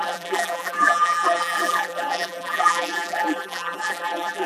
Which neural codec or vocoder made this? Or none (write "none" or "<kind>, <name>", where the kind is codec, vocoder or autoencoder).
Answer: vocoder, BigVGAN v2